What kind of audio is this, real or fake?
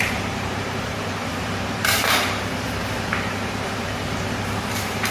fake